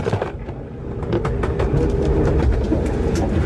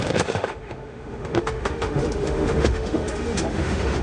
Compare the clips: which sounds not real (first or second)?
second